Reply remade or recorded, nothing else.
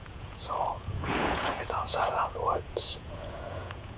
remade